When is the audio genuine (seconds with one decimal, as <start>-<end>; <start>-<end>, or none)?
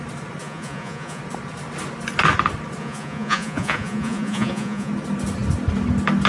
0.0-0.4; 1.2-2.8; 4.9-6.3